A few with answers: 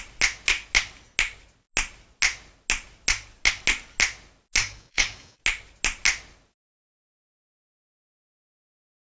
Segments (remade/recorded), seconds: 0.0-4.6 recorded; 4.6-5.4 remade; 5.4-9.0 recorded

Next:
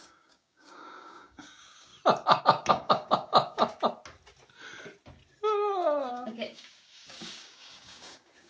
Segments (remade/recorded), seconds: 0.0-1.9 remade; 1.9-2.4 recorded; 2.4-3.6 remade; 3.6-6.1 recorded; 6.1-8.5 remade

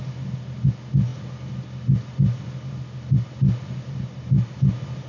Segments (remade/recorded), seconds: 0.0-5.1 recorded

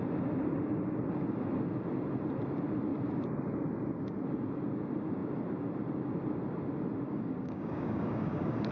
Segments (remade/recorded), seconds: 0.0-7.1 recorded; 7.1-8.7 remade

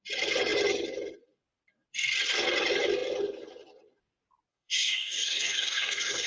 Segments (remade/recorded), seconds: 0.0-4.5 recorded; 4.5-6.3 remade

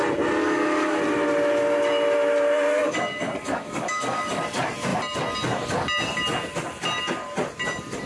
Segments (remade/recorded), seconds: 0.0-0.4 recorded; 0.4-1.0 remade; 1.0-2.8 recorded; 2.8-4.4 remade; 4.4-8.1 recorded

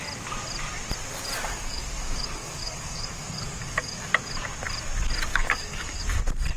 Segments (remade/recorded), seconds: 0.0-1.5 recorded; 1.5-4.1 remade; 4.1-5.3 recorded; 5.3-6.0 remade; 6.0-6.6 recorded

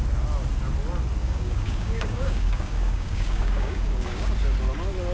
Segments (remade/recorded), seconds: 0.0-1.2 recorded; 1.2-4.3 remade; 4.3-5.1 recorded